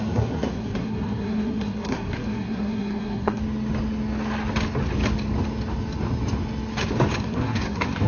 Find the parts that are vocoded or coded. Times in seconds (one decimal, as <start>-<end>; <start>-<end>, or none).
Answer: 0.0-3.4; 7.2-8.1